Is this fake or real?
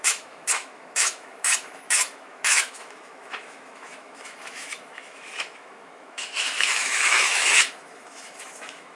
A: fake